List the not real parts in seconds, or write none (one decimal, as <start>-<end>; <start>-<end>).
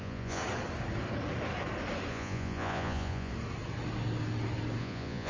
0.0-0.4; 2.1-3.3; 4.8-5.3